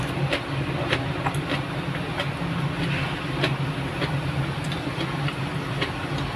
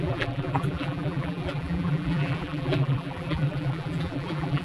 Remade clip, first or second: second